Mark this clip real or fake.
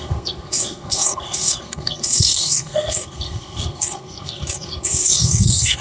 fake